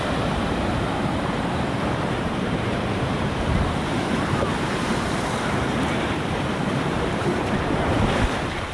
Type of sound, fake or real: fake